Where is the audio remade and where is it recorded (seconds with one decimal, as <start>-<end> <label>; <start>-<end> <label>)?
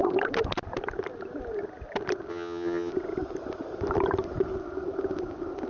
0.0-2.3 recorded; 2.3-2.9 remade; 2.9-5.7 recorded